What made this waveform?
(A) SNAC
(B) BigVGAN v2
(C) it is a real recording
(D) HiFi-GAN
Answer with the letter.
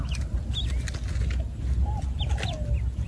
C